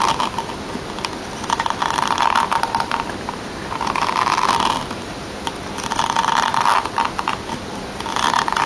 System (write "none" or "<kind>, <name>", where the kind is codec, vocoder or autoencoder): none